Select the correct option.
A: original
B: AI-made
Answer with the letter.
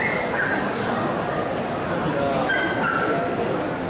A